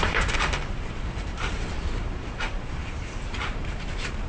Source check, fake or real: fake